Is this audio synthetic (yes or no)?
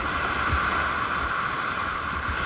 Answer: no